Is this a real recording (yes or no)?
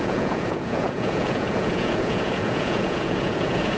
no